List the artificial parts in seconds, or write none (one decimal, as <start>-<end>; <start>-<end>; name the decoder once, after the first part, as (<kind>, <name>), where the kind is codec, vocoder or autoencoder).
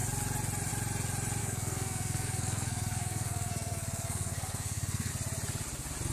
1.4-5.1 (codec, SNAC)